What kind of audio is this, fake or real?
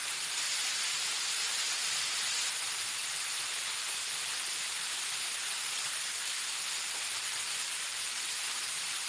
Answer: fake